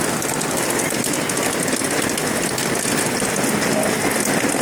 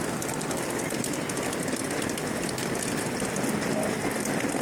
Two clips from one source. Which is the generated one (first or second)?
second